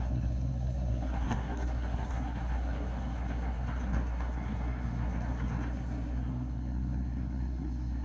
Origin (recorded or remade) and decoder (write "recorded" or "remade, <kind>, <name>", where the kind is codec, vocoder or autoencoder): remade, codec, SNAC